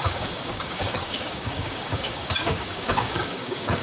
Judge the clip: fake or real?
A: fake